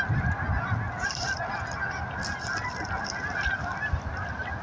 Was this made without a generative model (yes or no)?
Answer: yes